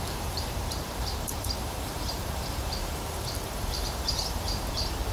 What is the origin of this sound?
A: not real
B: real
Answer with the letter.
A